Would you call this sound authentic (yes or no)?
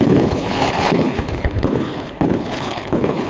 no